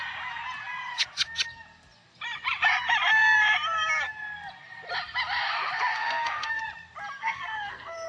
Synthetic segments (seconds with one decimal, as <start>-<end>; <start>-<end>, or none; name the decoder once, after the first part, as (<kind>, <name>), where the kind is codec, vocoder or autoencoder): 5.9-6.5 (codec, SNAC); 7.2-8.1